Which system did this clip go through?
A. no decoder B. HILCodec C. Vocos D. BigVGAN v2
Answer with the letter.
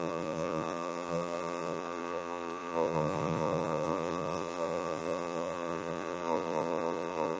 C